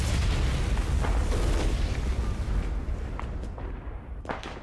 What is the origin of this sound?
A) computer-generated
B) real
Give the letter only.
B